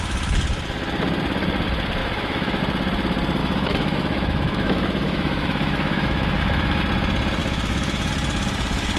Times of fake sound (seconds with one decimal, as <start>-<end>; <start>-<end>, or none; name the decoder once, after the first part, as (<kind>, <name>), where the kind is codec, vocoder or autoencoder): 2.0-2.6 (autoencoder, DAC-VAE); 3.4-6.8; 7.4-8.1